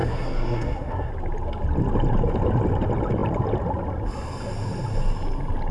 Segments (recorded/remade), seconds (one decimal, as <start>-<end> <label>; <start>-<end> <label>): 0.0-1.1 remade; 1.1-5.7 recorded